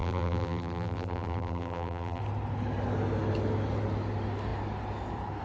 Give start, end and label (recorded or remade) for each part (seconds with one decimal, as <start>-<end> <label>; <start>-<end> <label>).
0.0-2.2 remade; 2.2-5.4 recorded